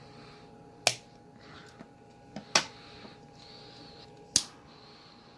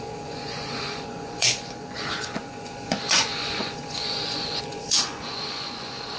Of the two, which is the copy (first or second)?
second